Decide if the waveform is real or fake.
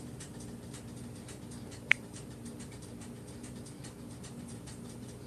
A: fake